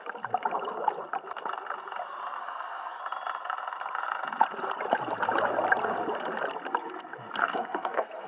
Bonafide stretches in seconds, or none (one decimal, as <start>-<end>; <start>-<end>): 0.0-2.4; 3.0-7.4